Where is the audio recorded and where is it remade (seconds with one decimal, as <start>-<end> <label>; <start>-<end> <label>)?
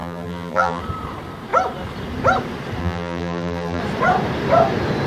0.0-0.8 remade; 0.8-2.8 recorded; 2.8-3.8 remade; 3.8-5.1 recorded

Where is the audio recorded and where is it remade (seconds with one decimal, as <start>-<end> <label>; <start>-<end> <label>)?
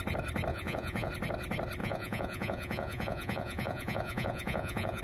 0.0-0.5 recorded; 0.5-1.1 remade; 1.1-1.8 recorded; 1.8-5.0 remade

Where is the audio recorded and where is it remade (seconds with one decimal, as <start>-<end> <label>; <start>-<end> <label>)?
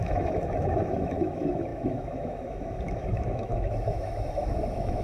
0.0-5.0 remade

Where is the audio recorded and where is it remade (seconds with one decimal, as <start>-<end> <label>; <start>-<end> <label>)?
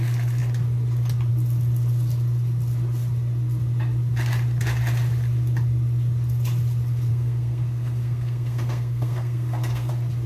0.0-7.1 recorded; 7.1-9.9 remade; 9.9-10.3 recorded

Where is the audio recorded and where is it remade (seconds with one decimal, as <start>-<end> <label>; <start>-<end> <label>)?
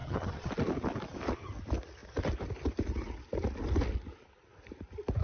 0.0-0.5 remade; 0.5-5.2 recorded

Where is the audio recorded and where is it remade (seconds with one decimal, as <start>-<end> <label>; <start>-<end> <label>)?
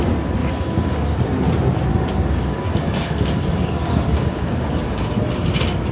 0.0-0.4 recorded; 0.4-1.2 remade; 1.2-1.9 recorded; 1.9-4.9 remade; 4.9-5.9 recorded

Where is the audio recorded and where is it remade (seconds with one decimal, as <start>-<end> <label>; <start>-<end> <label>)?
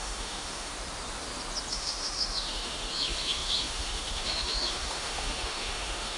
0.0-0.7 remade; 0.7-1.7 recorded; 1.7-6.2 remade